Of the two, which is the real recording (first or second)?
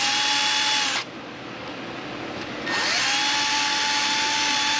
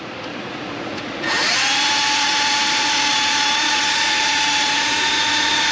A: first